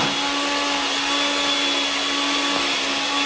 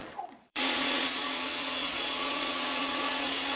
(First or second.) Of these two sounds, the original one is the first